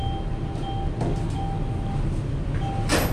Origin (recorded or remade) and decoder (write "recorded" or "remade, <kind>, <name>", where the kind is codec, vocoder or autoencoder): recorded